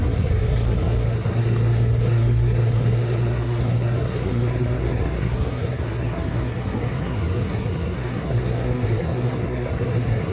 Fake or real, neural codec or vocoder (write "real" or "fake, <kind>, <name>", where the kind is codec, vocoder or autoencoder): fake, codec, SNAC